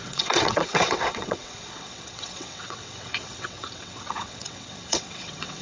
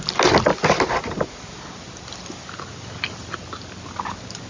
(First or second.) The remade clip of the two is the first